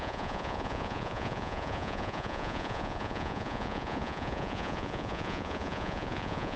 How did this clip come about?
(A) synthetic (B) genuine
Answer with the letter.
A